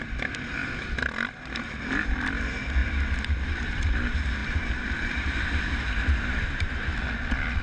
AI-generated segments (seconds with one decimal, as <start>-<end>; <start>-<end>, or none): 2.8-3.8; 4.4-6.8